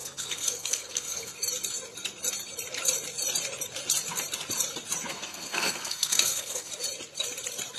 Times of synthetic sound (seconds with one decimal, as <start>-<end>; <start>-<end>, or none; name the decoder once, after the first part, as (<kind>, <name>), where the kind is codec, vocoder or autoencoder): 0.0-1.3 (codec, SNAC); 5.1-6.7